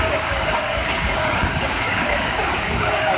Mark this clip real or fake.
fake